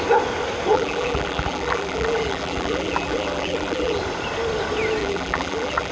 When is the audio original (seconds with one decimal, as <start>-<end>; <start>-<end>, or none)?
0.0-0.7; 4.0-5.0